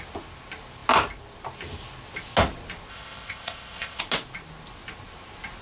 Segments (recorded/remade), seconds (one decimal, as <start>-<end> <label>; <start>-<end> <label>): 0.0-2.9 recorded; 2.9-4.0 remade; 4.0-5.6 recorded